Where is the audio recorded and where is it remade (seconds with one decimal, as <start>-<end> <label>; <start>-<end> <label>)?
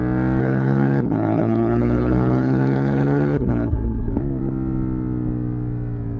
0.0-0.4 recorded; 0.4-4.1 remade; 4.1-6.2 recorded